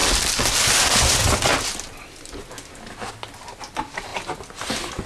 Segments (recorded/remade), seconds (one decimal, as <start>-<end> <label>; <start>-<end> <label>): 0.0-5.1 recorded